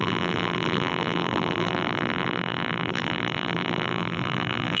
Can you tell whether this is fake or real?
fake